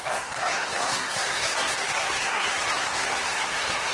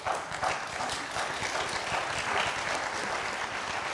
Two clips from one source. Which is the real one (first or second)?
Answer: second